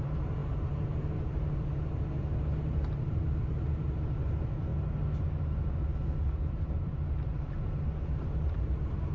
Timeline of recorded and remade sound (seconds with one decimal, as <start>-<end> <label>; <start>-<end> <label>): 0.0-4.7 remade; 4.7-6.4 recorded; 6.4-9.1 remade